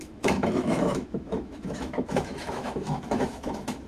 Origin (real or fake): fake